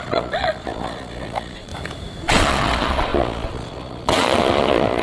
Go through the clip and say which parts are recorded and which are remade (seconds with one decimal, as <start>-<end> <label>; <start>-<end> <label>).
0.0-1.7 remade; 1.7-2.3 recorded; 2.3-5.0 remade